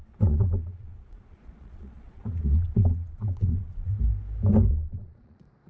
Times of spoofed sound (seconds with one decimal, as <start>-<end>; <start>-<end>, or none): 0.0-3.9; 4.7-5.7

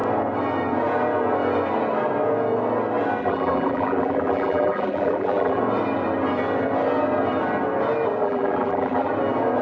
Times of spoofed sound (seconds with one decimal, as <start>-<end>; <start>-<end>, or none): 3.2-5.6; 8.2-9.1

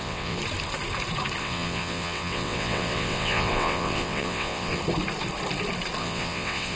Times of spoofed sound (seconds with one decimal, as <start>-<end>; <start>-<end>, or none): 0.0-0.4; 1.4-4.8; 6.0-6.8

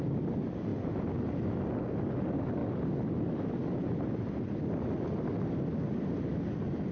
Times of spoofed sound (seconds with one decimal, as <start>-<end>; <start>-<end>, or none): none

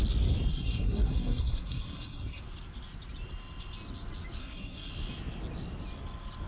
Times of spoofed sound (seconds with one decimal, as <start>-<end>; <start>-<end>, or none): 0.5-2.4; 4.4-4.9